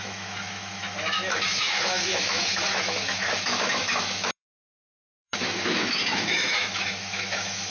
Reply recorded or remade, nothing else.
remade